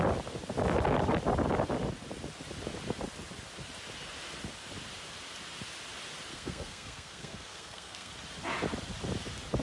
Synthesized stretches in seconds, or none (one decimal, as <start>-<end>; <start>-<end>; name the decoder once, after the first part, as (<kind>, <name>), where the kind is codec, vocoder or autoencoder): 6.3-8.1 (codec, SNAC)